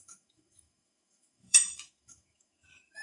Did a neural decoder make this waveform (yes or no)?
yes